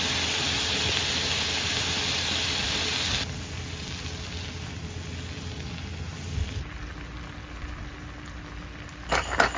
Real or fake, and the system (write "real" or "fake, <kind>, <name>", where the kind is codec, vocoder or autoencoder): real